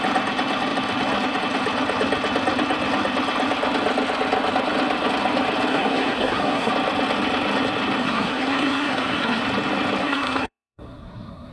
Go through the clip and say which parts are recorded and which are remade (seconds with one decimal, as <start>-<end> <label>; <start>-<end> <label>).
0.0-5.7 recorded; 5.7-6.7 remade; 6.7-8.0 recorded; 8.0-9.4 remade; 9.4-10.0 recorded; 10.0-11.5 remade